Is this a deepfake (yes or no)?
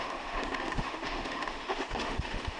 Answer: yes